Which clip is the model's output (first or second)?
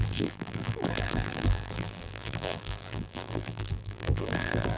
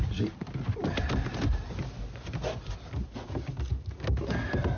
first